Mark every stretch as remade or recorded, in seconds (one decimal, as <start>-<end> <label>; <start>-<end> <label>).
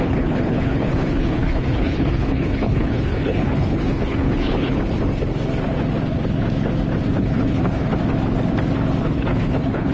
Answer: 0.0-4.7 remade; 4.7-7.1 recorded; 7.1-7.9 remade; 7.9-9.0 recorded; 9.0-9.9 remade